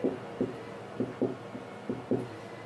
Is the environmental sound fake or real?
real